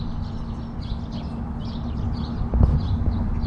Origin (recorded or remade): recorded